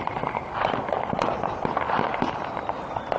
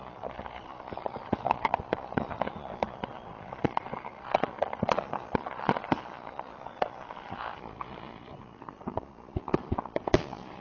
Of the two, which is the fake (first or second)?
second